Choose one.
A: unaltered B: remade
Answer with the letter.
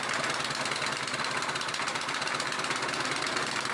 A